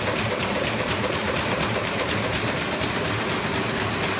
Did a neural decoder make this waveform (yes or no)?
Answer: yes